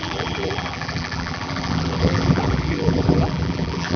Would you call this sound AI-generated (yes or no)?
yes